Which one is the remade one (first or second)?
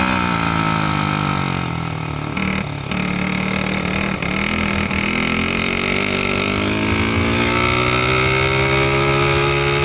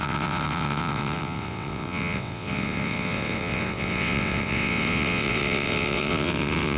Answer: second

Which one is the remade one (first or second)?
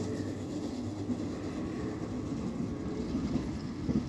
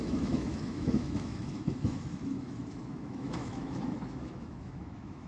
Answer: second